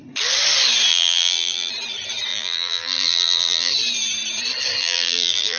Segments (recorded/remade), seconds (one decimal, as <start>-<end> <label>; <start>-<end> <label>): 0.0-0.9 recorded; 0.9-1.7 remade; 1.7-2.3 recorded; 2.3-3.7 remade; 3.7-4.8 recorded; 4.8-5.6 remade